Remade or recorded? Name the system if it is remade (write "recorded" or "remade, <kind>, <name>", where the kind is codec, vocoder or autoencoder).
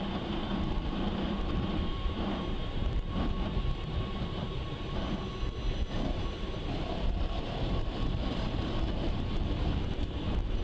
remade, vocoder, BigVGAN v2